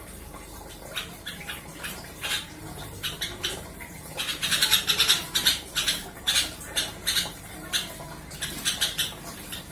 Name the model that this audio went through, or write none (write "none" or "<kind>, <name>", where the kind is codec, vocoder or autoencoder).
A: vocoder, BigVGAN v2